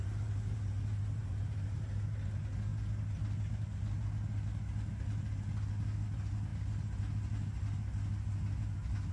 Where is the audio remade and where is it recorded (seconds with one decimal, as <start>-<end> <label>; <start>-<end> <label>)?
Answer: 0.0-9.1 recorded